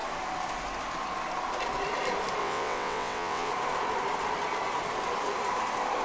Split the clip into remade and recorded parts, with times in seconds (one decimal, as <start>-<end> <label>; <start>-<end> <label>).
0.0-2.4 recorded; 2.4-3.5 remade; 3.5-6.0 recorded